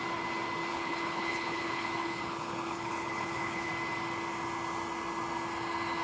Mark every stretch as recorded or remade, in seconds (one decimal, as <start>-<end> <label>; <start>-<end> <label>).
0.0-0.7 recorded; 0.7-3.7 remade; 3.7-6.0 recorded